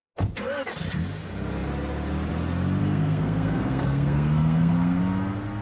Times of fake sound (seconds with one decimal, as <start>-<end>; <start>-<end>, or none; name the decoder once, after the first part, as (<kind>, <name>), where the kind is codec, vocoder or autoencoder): 2.8-5.0 (codec, SNAC)